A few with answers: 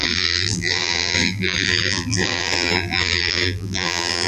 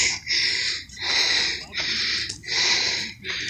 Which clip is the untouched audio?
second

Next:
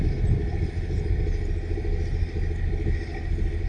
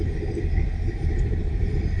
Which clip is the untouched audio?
first